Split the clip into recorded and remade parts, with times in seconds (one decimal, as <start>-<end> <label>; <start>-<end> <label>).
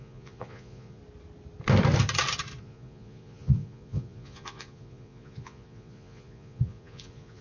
0.0-1.0 remade; 1.0-2.6 recorded; 2.6-7.4 remade